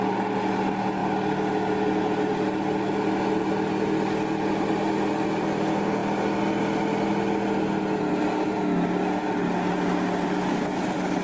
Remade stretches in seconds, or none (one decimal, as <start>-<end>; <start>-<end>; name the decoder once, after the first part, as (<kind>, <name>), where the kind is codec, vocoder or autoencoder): none